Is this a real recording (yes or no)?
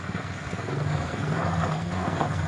no